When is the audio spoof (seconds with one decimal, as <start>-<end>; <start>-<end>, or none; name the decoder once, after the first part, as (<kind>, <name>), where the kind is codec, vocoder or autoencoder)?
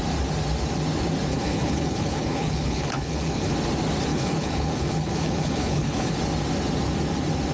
1.3-3.5 (codec, HILCodec); 4.1-6.1